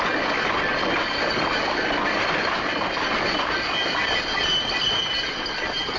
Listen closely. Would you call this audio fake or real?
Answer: real